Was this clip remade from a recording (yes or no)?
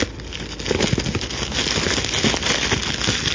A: no